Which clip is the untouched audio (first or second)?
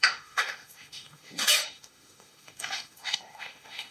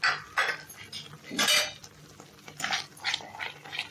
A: second